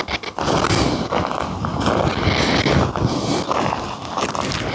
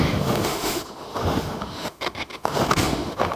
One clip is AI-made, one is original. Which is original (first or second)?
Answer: first